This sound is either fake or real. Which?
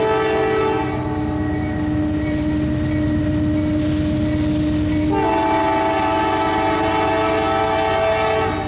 real